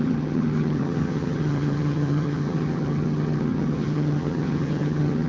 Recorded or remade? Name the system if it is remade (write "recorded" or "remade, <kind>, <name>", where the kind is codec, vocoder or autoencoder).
remade, vocoder, HiFi-GAN